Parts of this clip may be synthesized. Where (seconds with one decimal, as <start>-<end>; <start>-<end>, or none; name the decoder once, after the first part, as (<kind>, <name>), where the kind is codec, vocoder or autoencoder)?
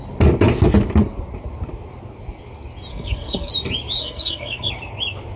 2.9-3.5 (codec, SNAC); 4.0-4.7